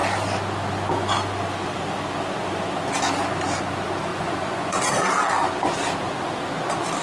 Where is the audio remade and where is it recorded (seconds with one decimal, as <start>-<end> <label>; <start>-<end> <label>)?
0.0-4.1 recorded; 4.1-4.9 remade; 4.9-7.0 recorded